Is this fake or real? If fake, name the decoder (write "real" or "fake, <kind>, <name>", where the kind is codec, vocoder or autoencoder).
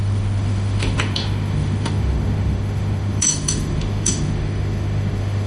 fake, autoencoder, DAC-VAE